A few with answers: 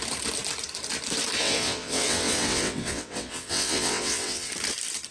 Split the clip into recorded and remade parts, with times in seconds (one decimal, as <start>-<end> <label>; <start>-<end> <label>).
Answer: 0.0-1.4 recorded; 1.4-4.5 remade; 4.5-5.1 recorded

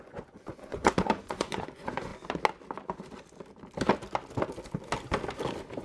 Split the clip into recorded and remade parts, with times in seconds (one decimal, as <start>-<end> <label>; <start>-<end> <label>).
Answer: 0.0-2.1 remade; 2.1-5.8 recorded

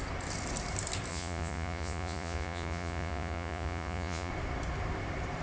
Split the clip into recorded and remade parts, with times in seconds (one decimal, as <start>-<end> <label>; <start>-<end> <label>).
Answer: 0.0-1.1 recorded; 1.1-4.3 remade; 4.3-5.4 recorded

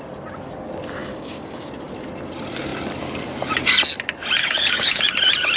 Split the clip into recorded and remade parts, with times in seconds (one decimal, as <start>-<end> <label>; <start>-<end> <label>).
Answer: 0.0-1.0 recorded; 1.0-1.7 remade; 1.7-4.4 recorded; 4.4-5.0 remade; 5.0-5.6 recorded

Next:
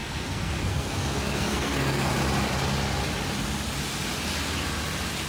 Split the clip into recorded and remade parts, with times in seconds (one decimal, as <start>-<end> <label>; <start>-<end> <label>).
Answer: 0.0-2.1 remade; 2.1-5.3 recorded

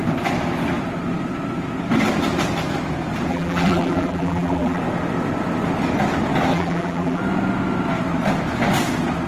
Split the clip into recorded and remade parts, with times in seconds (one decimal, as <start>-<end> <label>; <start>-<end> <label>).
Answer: 0.0-3.3 recorded; 3.3-4.8 remade; 4.8-6.5 recorded; 6.5-7.2 remade; 7.2-9.3 recorded

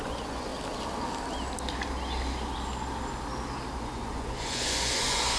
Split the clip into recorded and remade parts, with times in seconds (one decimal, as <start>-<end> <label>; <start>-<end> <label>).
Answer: 0.0-0.5 remade; 0.5-3.7 recorded; 3.7-5.4 remade

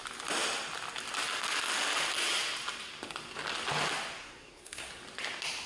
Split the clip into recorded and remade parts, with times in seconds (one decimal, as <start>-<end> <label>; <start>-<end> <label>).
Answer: 0.0-4.2 recorded; 4.2-4.9 remade; 4.9-5.7 recorded